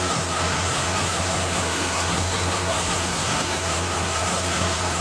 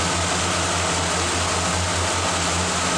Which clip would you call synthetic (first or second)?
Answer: first